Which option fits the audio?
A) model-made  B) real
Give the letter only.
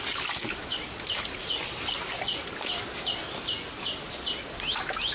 B